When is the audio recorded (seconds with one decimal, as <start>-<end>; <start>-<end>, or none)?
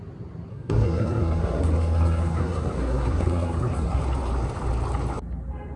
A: 0.0-0.5; 4.0-5.8